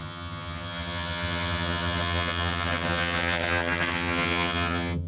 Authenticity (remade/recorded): remade